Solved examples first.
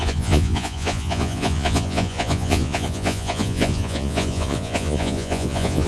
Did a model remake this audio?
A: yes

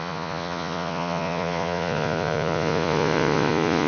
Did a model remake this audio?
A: yes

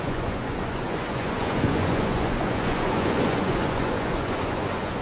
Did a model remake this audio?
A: yes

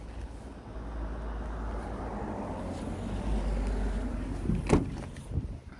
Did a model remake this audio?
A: no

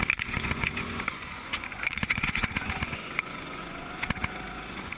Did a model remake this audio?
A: yes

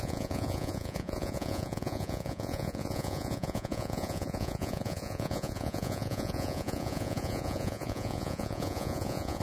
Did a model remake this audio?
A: yes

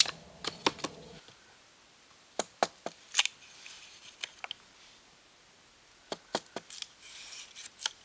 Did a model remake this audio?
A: no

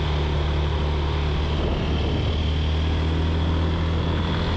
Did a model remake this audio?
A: no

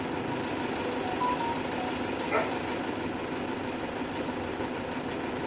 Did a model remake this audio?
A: no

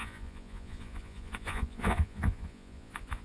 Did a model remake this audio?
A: yes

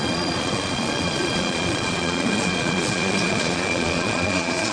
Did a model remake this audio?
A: yes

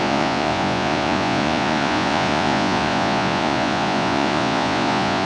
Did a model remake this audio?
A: yes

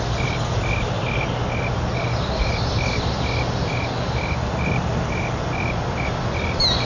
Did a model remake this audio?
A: no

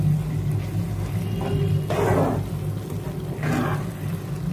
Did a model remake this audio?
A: no